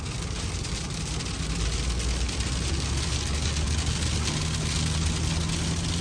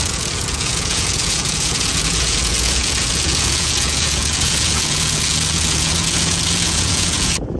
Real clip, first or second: first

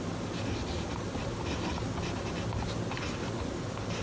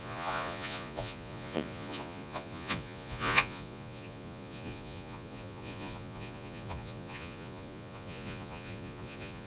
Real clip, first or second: first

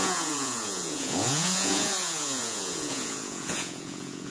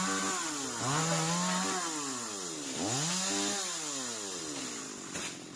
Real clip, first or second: second